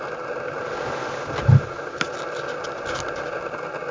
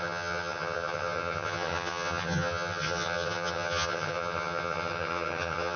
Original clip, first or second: first